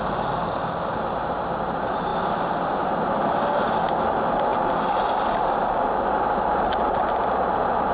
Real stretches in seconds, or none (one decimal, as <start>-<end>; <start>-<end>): 0.0-7.9